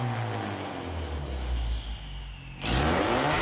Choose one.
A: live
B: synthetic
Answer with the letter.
A